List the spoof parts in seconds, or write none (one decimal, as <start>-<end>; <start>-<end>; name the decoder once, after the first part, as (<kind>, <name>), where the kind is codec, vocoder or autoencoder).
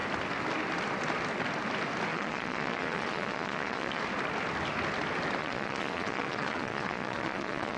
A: 2.1-4.0 (vocoder, Vocos); 5.4-7.8